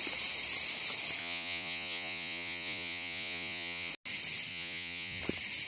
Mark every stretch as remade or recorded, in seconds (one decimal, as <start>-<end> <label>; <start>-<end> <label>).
0.0-1.2 recorded; 1.2-3.9 remade; 3.9-4.5 recorded; 4.5-5.2 remade; 5.2-5.7 recorded